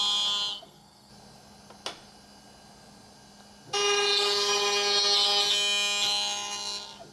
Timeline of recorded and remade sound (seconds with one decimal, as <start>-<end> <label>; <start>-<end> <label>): 0.0-0.5 recorded; 0.5-1.1 remade; 1.1-7.1 recorded